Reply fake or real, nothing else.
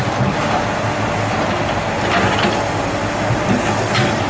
real